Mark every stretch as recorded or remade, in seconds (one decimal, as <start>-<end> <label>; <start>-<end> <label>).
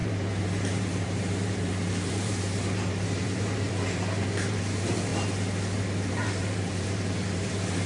0.0-5.1 remade; 5.1-5.8 recorded; 5.8-7.9 remade